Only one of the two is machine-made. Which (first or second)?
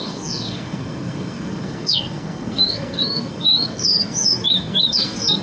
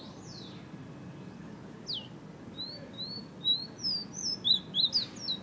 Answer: first